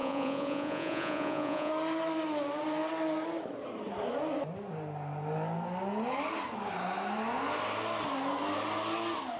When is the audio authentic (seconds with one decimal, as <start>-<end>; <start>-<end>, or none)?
1.7-9.4